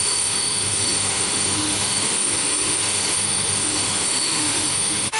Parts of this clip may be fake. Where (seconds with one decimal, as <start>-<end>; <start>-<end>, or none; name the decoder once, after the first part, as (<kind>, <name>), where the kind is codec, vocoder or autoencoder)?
0.0-5.2 (autoencoder, DAC-VAE)